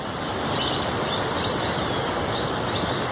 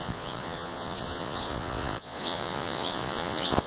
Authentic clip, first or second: first